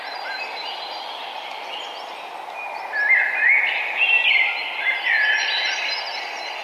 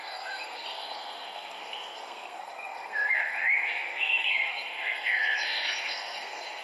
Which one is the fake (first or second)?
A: second